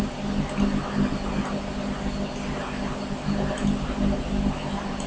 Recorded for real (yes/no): yes